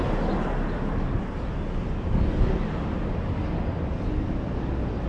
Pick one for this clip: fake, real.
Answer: real